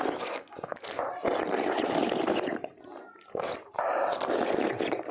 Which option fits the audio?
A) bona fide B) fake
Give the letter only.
A